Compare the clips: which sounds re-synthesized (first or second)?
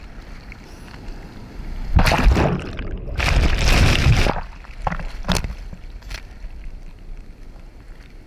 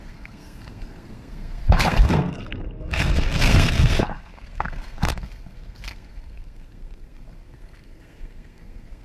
second